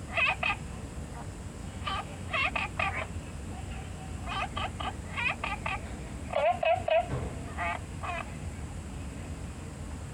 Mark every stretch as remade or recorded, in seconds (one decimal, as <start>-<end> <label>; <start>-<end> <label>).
0.0-1.6 recorded; 1.6-2.5 remade; 2.5-10.1 recorded